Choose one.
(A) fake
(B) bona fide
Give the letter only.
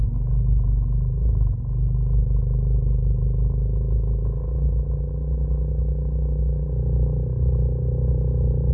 B